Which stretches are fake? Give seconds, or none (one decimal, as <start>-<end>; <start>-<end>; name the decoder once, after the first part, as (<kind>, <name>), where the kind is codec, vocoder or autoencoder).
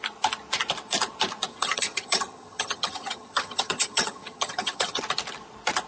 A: 1.5-5.0 (vocoder, HiFi-GAN)